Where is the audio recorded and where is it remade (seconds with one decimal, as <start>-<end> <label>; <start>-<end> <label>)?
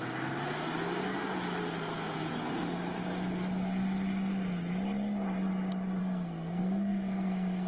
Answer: 0.0-6.0 recorded; 6.0-7.7 remade